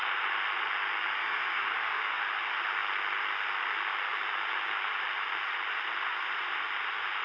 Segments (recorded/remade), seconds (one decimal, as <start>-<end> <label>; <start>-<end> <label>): 0.0-1.2 recorded; 1.2-2.2 remade; 2.2-7.2 recorded